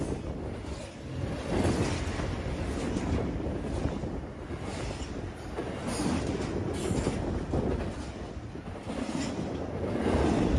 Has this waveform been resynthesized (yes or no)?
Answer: no